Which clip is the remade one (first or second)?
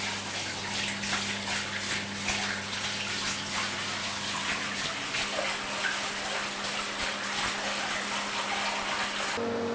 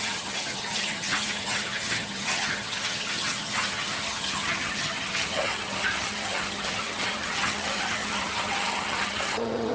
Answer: second